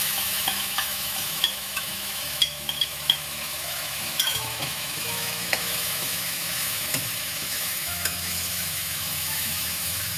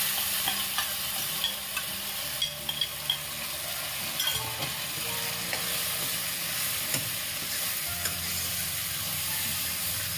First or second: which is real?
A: second